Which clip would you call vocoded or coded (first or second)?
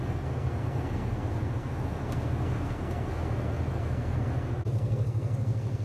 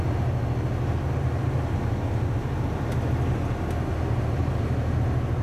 first